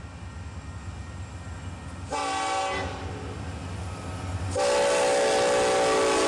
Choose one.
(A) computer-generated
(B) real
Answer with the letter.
B